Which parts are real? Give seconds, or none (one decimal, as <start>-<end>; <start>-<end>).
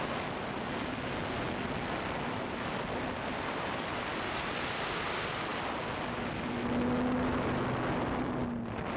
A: 0.0-9.0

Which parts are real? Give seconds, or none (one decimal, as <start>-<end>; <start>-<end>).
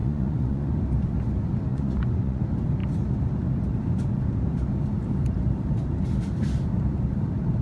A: 0.8-1.7; 2.4-7.6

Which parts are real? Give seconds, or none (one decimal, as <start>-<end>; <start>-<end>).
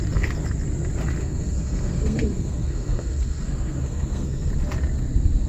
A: 0.0-1.2; 4.5-5.5